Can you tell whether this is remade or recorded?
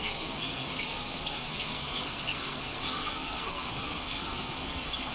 remade